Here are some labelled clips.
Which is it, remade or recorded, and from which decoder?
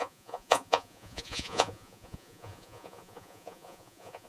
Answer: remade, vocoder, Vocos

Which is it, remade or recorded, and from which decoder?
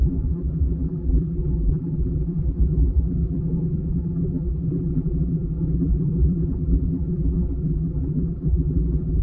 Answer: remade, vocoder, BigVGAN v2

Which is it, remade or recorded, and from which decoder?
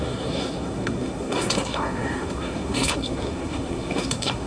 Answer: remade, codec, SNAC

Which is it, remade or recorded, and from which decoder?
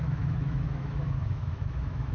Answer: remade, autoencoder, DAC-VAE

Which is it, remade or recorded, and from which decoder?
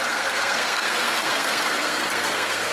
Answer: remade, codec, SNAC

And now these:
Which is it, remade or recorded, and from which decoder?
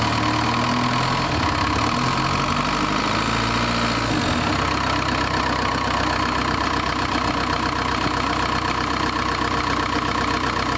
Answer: recorded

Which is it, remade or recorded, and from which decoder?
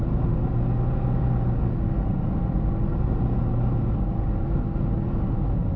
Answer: recorded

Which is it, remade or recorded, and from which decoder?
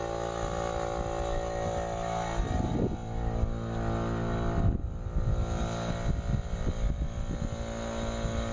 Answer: recorded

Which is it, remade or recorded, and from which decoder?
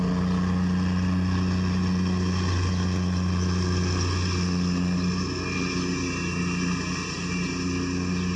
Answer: recorded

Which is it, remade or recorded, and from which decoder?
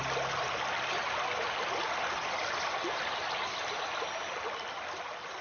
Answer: recorded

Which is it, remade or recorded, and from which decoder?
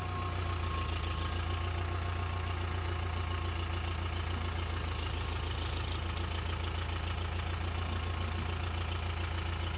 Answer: recorded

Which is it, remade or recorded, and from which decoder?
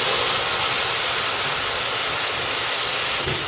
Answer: recorded